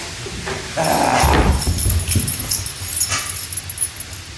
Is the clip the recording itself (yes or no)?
yes